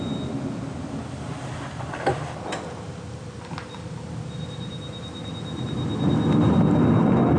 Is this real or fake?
real